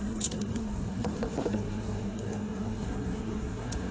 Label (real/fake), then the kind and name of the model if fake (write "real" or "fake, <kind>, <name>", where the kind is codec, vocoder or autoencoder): fake, codec, SNAC